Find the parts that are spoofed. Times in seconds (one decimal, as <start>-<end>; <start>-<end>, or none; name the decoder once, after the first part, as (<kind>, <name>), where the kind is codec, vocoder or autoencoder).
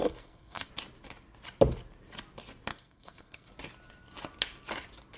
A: 0.0-0.7 (codec, SNAC); 2.7-3.5